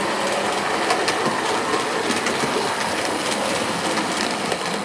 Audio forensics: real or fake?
real